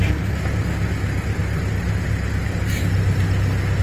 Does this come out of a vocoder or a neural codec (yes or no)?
no